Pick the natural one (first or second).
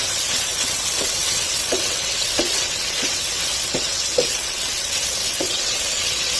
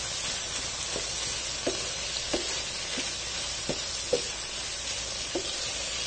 second